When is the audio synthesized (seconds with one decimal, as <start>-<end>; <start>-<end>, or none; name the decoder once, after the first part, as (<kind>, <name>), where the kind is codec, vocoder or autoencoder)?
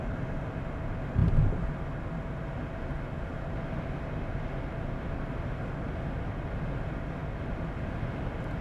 1.2-1.7 (vocoder, BigVGAN v2)